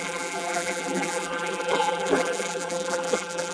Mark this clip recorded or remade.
remade